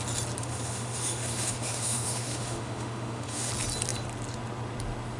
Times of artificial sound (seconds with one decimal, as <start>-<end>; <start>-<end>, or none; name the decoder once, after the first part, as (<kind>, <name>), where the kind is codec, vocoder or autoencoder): 0.4-3.5 (autoencoder, DAC-VAE)